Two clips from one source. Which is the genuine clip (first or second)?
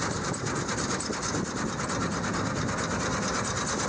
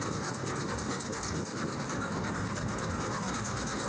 first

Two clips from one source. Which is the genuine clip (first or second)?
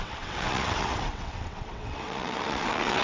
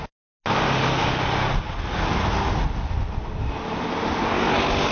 second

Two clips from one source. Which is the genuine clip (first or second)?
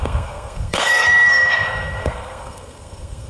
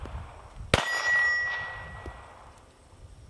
second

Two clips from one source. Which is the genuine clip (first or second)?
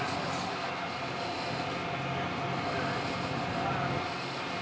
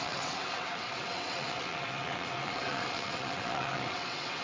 first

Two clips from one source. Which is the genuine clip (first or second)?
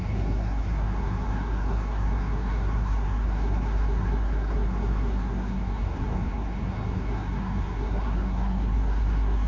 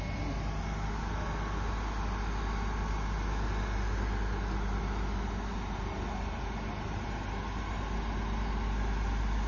second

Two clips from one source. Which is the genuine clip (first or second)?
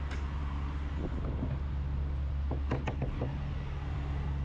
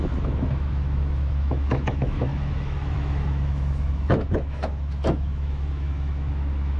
first